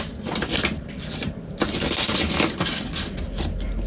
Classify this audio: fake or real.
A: real